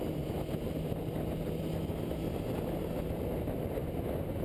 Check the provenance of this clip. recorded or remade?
recorded